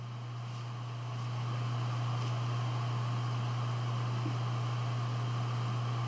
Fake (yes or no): no